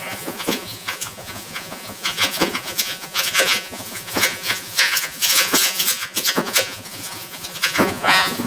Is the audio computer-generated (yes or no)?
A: yes